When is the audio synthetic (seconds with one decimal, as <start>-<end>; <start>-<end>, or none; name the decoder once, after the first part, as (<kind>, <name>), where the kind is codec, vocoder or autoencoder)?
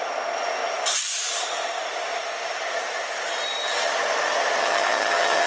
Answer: 4.6-5.5 (vocoder, HiFi-GAN)